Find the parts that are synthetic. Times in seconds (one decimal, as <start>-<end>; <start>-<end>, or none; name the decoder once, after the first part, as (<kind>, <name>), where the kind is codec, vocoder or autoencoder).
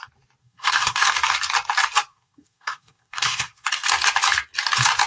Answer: 0.4-1.1 (codec, SNAC); 2.1-3.7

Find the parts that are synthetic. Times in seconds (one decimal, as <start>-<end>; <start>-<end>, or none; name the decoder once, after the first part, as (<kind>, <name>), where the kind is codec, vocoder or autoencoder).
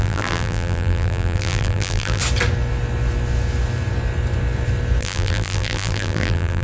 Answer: 0.0-2.2 (vocoder, BigVGAN v2); 5.0-6.6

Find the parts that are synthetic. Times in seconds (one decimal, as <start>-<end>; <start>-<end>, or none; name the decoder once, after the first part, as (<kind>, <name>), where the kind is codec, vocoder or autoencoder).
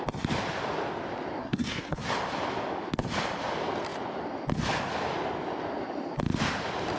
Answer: 1.4-2.1 (codec, SNAC)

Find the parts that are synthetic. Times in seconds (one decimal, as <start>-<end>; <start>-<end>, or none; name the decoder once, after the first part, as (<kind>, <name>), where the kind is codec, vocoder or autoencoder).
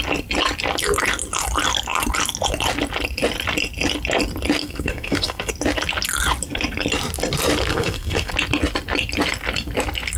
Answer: 4.6-5.5 (codec, SNAC); 7.7-8.3